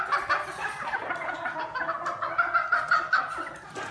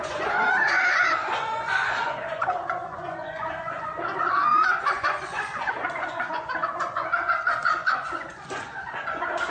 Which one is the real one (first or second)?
first